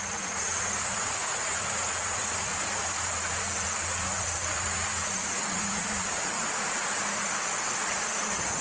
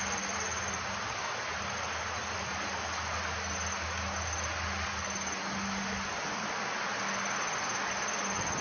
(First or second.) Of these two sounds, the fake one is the first